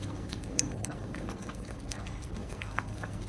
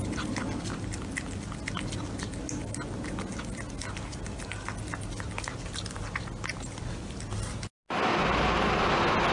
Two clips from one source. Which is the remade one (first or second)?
first